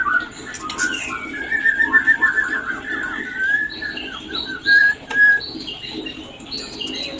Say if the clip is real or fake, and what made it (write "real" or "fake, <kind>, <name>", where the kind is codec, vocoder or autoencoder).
real